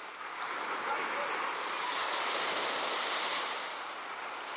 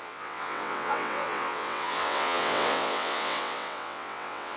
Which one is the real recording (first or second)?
first